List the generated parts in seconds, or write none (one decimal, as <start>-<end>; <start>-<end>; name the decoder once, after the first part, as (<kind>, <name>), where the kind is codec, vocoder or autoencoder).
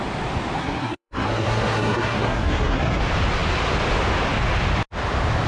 0.6-3.0 (codec, SNAC)